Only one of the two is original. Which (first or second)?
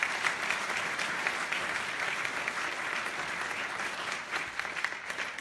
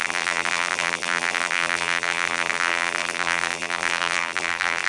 first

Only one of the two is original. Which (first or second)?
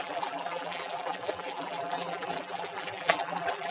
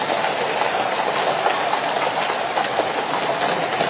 second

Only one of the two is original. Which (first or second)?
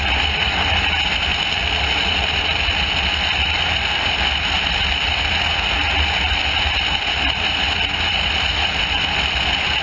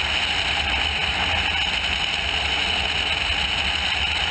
second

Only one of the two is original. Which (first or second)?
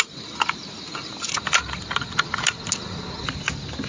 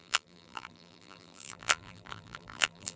first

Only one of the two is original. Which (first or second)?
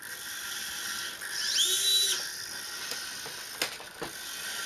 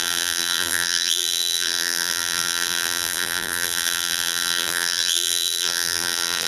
first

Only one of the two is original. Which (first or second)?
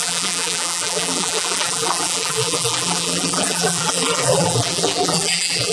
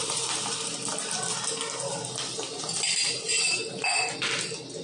second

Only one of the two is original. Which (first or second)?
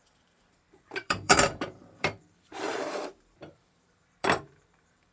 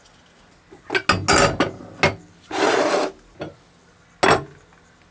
second